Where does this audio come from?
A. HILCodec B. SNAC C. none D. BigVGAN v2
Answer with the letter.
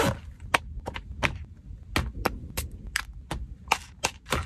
C